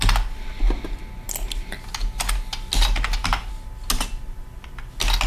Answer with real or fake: real